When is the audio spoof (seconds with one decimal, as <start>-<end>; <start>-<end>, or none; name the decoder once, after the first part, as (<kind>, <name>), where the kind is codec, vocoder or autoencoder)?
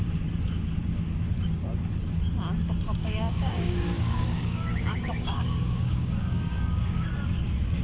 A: 3.0-7.1 (codec, DAC)